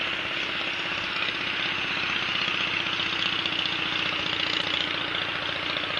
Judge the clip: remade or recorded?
recorded